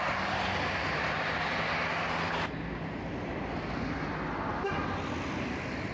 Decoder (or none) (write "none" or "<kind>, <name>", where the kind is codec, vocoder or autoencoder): none